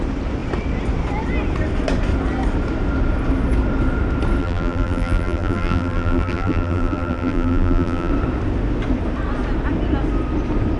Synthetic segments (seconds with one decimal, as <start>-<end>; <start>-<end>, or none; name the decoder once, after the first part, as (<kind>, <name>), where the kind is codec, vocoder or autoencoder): 4.4-8.1 (vocoder, BigVGAN v2)